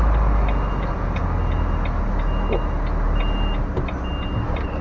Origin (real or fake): real